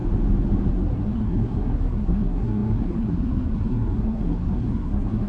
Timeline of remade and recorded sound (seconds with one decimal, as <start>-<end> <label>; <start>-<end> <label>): 0.0-0.7 recorded; 0.7-5.3 remade

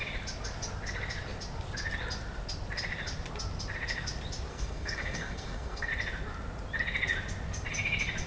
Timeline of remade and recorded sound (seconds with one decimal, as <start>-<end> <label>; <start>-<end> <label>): 0.0-4.5 recorded; 4.5-5.9 remade; 5.9-8.3 recorded